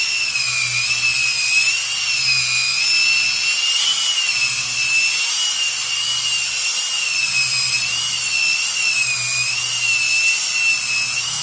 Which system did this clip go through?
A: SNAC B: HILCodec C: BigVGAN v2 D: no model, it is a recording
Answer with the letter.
D